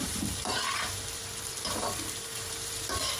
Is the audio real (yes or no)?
no